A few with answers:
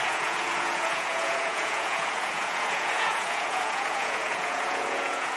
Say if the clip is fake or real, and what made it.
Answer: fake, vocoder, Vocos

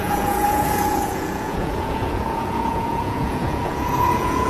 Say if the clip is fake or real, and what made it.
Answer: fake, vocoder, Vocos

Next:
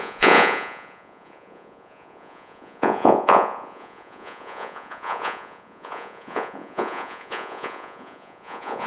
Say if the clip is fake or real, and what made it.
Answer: fake, vocoder, Vocos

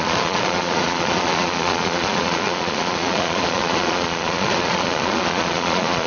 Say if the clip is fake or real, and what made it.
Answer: fake, vocoder, Vocos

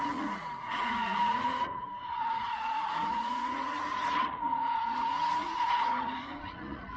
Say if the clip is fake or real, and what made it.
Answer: fake, vocoder, Vocos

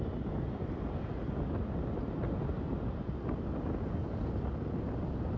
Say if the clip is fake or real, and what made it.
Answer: real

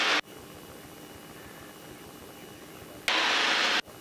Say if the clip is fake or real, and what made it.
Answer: real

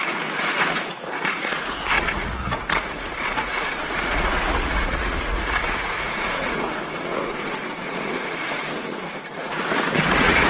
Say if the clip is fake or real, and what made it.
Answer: fake, vocoder, Vocos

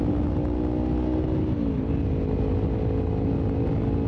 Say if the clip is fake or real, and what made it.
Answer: real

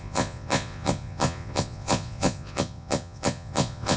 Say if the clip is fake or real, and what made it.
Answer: fake, vocoder, Vocos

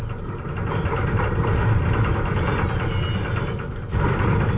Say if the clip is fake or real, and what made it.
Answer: real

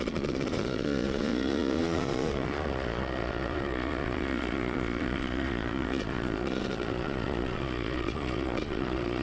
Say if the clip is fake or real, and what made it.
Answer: fake, vocoder, Vocos